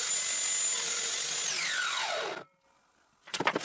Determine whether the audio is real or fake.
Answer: real